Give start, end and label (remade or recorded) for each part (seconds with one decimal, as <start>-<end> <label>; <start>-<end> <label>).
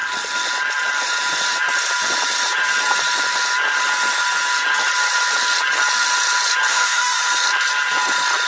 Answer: 0.0-6.7 recorded; 6.7-7.2 remade; 7.2-8.5 recorded